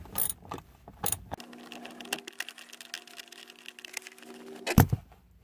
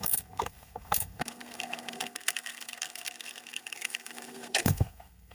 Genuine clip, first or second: first